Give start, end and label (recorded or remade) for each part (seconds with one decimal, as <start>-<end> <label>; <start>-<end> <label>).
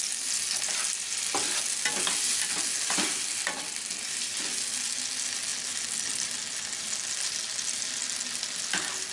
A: 0.0-9.1 recorded